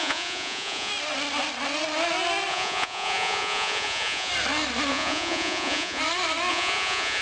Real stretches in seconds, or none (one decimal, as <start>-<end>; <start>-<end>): 0.9-2.5; 4.3-4.9; 6.0-6.5